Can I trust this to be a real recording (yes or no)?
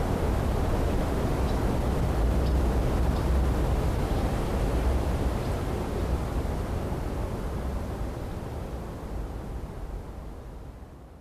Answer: yes